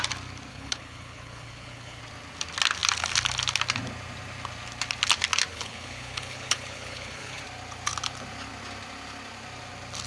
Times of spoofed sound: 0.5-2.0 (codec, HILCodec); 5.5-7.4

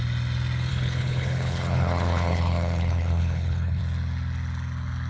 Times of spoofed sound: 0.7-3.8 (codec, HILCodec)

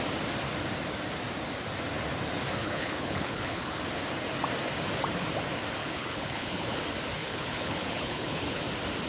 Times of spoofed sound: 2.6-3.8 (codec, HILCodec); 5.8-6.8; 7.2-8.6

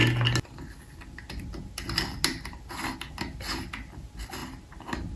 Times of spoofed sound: none